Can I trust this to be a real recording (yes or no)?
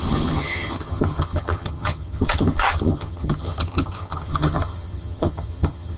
no